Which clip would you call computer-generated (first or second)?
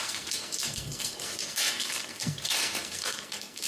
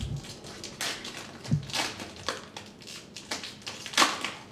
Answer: first